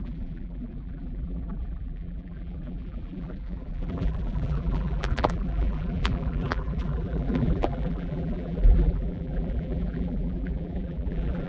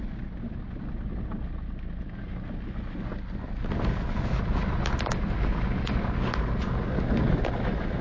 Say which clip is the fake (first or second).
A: first